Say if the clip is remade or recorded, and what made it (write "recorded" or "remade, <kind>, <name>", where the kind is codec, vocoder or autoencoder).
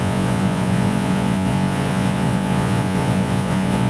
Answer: remade, vocoder, Vocos